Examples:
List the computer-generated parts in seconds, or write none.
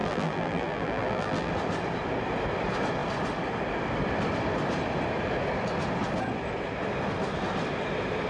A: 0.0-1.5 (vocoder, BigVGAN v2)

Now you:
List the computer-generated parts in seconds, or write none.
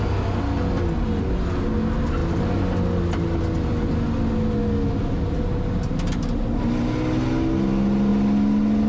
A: none